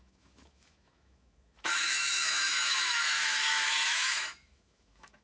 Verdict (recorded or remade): remade